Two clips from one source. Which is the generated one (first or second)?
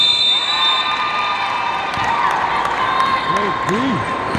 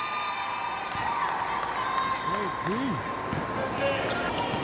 first